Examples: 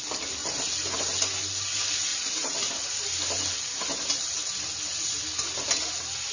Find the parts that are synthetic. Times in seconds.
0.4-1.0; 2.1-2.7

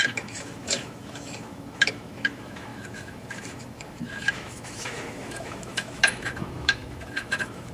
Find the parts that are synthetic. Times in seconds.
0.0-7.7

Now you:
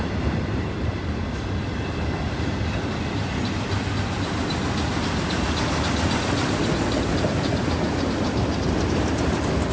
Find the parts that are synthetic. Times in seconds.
none

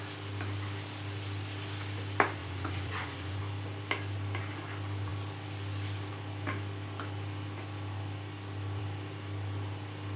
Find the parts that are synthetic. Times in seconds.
2.4-3.4

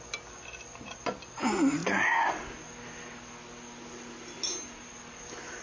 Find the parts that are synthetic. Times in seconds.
none

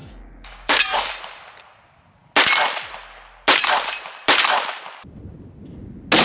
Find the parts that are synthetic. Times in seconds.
0.0-1.1

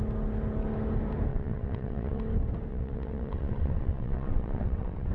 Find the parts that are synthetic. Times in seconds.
1.3-2.2; 2.7-5.1

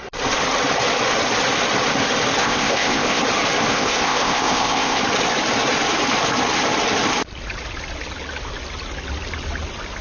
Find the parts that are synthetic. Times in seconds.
2.4-3.2; 3.7-5.0